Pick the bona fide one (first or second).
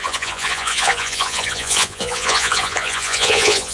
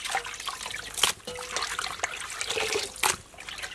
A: second